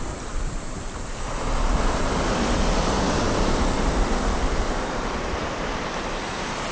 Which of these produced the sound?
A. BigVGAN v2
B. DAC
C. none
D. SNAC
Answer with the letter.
A